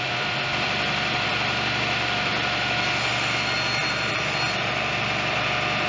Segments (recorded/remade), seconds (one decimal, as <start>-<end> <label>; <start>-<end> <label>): 0.0-1.3 remade; 1.3-1.8 recorded; 1.8-2.3 remade; 2.3-4.1 recorded; 4.1-5.9 remade